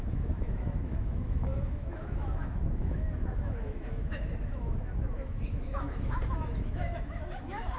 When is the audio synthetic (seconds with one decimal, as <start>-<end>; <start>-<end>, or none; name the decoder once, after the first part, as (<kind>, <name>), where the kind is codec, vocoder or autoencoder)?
0.0-7.8 (autoencoder, DAC-VAE)